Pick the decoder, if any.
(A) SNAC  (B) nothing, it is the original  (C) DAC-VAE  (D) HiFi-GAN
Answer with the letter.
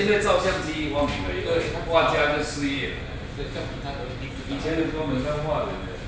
B